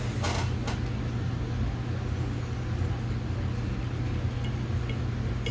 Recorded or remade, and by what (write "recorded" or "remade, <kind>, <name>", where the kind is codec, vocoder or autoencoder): recorded